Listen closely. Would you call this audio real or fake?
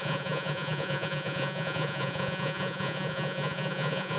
fake